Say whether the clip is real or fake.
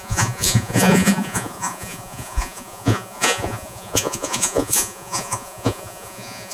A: fake